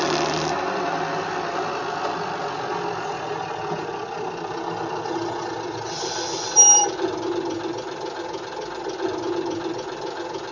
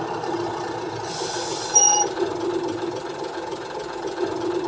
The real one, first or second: first